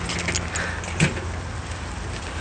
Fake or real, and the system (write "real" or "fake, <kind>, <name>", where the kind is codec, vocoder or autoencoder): real